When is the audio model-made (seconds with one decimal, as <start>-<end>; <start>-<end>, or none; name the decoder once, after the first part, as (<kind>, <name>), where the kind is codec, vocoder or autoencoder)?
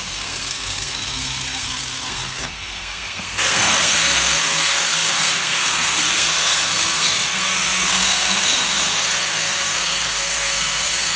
0.0-11.2 (codec, SNAC)